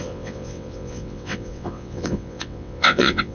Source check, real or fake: fake